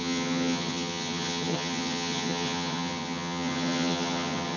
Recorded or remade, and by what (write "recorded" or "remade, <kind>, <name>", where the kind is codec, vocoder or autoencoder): remade, vocoder, HiFi-GAN